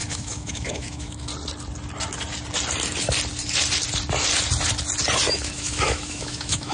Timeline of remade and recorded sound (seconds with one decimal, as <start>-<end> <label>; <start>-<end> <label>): 0.0-1.3 remade; 1.3-5.3 recorded; 5.3-6.7 remade